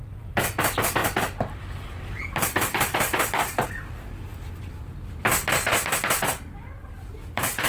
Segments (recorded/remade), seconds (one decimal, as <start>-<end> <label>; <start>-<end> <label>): 0.0-6.8 recorded; 6.8-7.7 remade